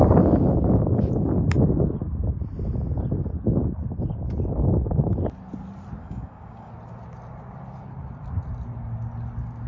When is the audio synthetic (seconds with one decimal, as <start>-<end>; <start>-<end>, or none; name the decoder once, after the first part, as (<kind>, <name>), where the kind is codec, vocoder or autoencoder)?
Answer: 6.0-6.7 (codec, DAC)